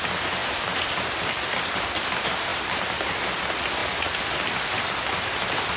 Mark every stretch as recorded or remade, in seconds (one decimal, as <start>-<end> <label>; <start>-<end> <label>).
0.0-0.4 recorded; 0.4-1.8 remade; 1.8-3.8 recorded; 3.8-5.3 remade; 5.3-5.8 recorded

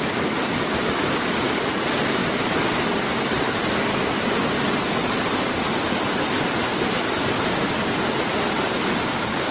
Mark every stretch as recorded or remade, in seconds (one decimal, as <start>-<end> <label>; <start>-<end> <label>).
0.0-9.5 recorded

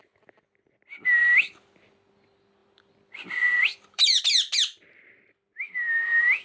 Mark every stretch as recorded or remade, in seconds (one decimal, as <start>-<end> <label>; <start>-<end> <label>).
0.0-2.6 recorded; 2.6-4.2 remade; 4.2-6.4 recorded

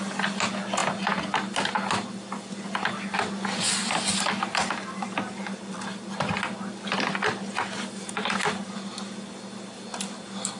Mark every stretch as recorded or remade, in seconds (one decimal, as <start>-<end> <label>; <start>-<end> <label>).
0.0-10.6 recorded

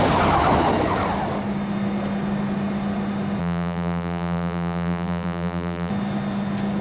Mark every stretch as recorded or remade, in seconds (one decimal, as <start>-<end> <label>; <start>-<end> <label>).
0.0-3.4 recorded; 3.4-5.9 remade; 5.9-6.8 recorded

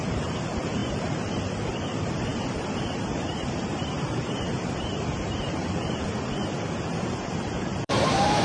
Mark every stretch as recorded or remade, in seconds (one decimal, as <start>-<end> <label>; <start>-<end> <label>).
0.0-8.4 remade

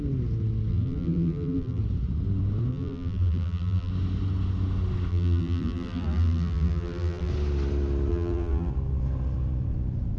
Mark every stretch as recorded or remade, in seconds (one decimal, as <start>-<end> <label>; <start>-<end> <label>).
0.0-0.7 recorded; 0.7-1.8 remade; 1.8-2.7 recorded; 2.7-3.9 remade; 3.9-5.1 recorded; 5.1-7.3 remade; 7.3-8.1 recorded; 8.1-8.7 remade; 8.7-10.2 recorded